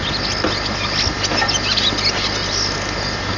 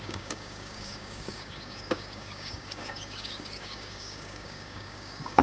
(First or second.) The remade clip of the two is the second